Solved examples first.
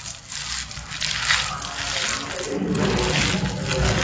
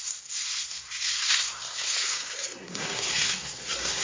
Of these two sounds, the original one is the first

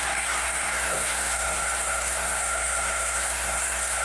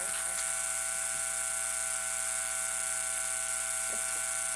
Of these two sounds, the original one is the second